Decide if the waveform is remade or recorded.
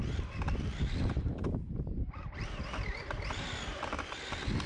recorded